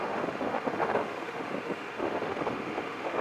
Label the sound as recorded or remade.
remade